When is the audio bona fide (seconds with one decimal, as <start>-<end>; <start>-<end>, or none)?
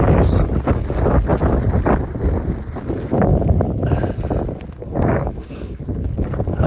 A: 0.0-4.8